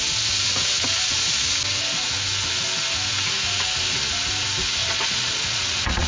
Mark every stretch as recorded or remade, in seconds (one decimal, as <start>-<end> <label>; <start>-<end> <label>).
0.0-4.8 recorded; 4.8-6.1 remade